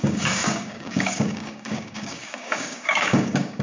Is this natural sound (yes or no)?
no